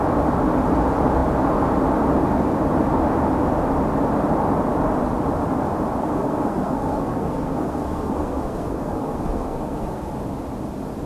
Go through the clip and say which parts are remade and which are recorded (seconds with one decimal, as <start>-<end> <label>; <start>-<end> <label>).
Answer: 0.0-6.0 recorded; 6.0-10.1 remade; 10.1-11.1 recorded